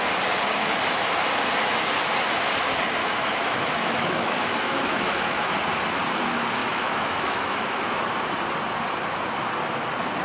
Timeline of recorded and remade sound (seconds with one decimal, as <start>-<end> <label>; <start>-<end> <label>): 0.0-3.0 recorded; 3.0-5.5 remade; 5.5-6.6 recorded; 6.6-8.0 remade; 8.0-10.2 recorded